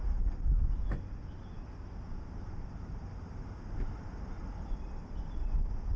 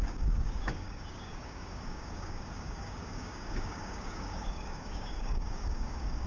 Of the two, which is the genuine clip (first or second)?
first